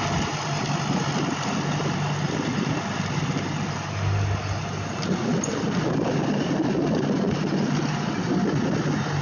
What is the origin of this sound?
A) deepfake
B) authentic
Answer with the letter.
B